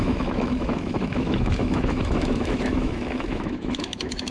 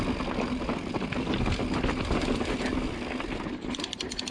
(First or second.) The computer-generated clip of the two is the first